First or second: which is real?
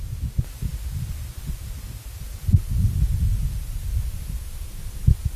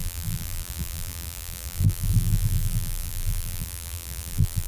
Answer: first